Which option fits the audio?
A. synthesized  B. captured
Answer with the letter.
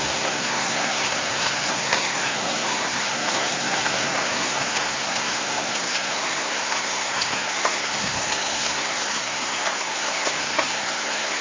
A